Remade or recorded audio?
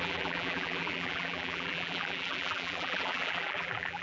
remade